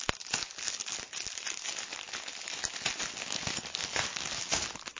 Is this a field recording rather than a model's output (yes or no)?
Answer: yes